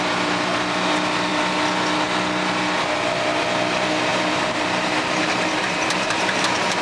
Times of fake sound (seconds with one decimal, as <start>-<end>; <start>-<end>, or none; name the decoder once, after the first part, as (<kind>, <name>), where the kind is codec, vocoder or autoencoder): 4.1-6.8 (vocoder, BigVGAN v2)